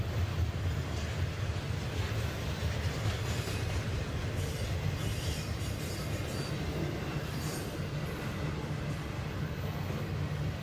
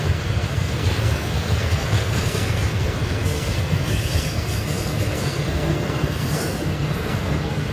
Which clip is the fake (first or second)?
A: second